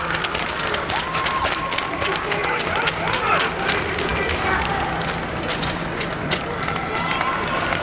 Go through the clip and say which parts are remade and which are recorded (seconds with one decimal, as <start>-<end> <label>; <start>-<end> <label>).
0.0-5.5 recorded; 5.5-6.4 remade; 6.4-7.8 recorded